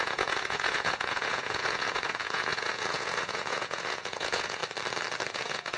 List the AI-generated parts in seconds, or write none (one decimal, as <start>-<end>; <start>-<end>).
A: 0.0-4.6; 5.3-5.8

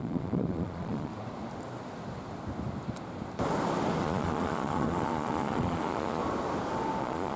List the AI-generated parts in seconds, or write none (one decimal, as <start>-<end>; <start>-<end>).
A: 0.0-1.1; 4.0-6.2; 7.0-7.4

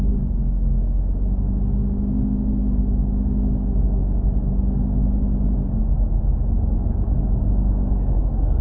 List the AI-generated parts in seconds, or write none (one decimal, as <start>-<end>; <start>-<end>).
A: none

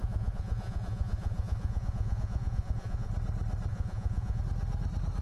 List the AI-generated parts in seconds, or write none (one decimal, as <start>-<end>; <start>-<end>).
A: 0.0-3.1; 3.7-4.4